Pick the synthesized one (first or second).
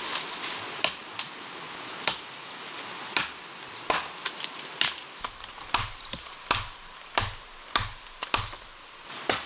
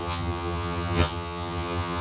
second